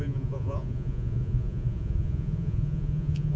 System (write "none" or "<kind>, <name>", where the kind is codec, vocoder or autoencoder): vocoder, Vocos